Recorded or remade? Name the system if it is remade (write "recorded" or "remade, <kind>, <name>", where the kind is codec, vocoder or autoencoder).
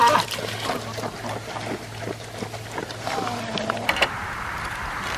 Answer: remade, vocoder, BigVGAN v2